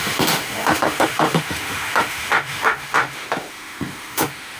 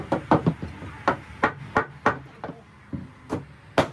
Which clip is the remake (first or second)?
first